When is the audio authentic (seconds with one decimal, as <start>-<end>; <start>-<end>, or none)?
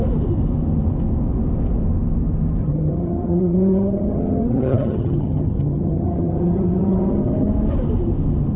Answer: 0.0-2.6; 7.5-8.6